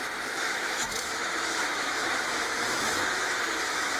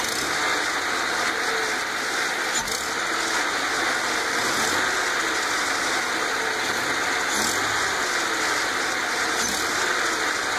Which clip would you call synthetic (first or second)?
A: first